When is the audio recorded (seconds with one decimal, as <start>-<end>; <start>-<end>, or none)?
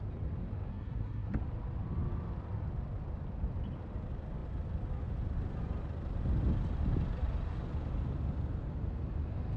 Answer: 0.0-0.7; 1.4-9.6